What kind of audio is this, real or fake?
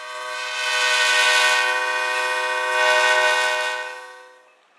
real